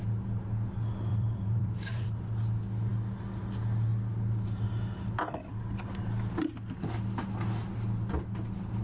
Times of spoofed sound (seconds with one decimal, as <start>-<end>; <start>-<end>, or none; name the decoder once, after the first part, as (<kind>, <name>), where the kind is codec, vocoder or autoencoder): 1.1-2.3 (vocoder, BigVGAN v2)